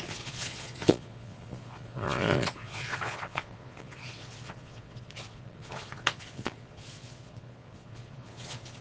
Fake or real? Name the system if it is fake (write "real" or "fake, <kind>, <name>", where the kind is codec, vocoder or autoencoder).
fake, vocoder, Vocos